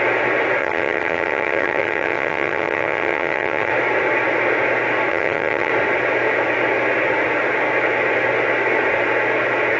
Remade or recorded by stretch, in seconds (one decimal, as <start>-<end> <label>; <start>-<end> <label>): 0.0-0.6 recorded; 0.6-3.7 remade; 3.7-5.1 recorded; 5.1-5.7 remade; 5.7-9.8 recorded